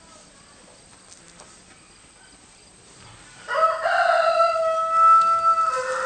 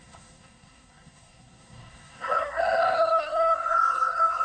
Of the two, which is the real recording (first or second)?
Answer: first